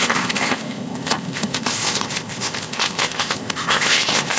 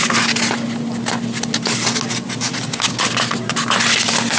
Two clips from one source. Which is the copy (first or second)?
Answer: first